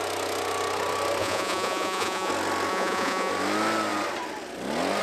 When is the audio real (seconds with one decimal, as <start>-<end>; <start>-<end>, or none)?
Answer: 0.0-1.2; 2.3-2.7; 3.3-5.0

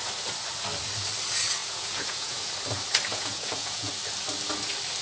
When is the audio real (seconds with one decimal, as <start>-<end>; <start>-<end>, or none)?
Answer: 0.0-1.6; 2.5-3.1; 3.9-5.0

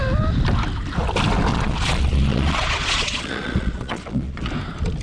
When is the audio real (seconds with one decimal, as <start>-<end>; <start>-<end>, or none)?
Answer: 0.0-1.5; 4.5-5.0

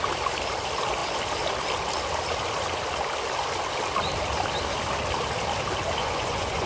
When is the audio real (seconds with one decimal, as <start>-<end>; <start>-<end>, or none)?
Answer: 0.0-6.0

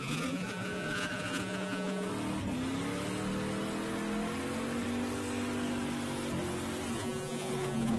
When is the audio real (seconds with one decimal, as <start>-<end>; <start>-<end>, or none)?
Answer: 2.1-6.9